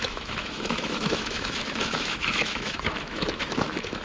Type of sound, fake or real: fake